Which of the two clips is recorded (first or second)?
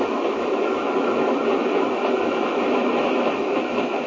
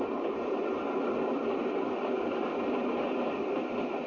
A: second